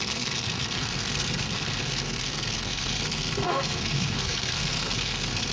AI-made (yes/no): yes